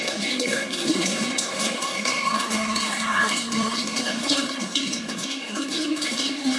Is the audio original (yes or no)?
no